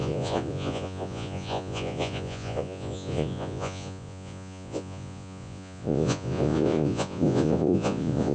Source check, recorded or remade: remade